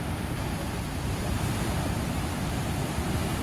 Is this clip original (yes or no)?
yes